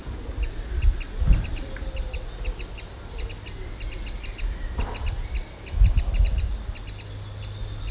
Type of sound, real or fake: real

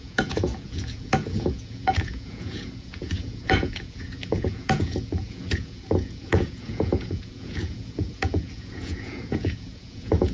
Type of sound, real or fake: fake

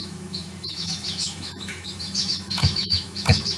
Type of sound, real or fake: fake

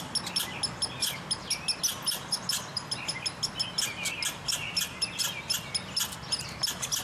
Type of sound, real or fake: real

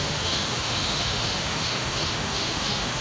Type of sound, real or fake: fake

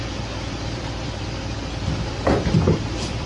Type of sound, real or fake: fake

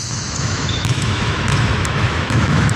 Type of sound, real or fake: fake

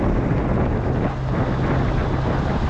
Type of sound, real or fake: real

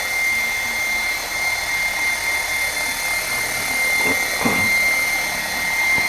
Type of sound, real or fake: real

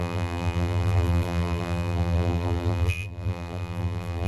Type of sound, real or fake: fake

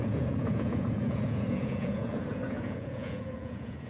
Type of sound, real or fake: fake